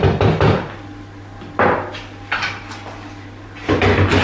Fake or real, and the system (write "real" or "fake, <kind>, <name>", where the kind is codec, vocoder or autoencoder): real